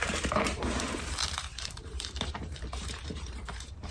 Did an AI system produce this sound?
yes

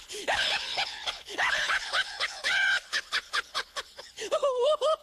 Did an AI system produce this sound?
yes